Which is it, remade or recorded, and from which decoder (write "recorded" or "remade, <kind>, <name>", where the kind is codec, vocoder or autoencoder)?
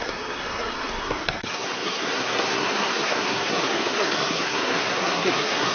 remade, codec, SNAC